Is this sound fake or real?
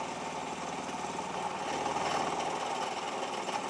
real